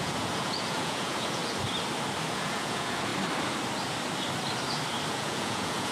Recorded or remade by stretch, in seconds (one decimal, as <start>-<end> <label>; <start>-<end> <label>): 0.0-1.4 remade; 1.4-2.2 recorded; 2.2-3.1 remade; 3.1-5.1 recorded; 5.1-5.9 remade